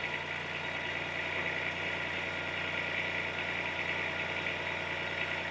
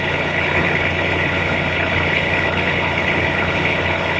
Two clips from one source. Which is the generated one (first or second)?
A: second